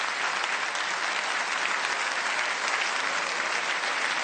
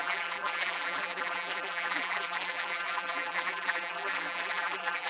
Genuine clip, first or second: first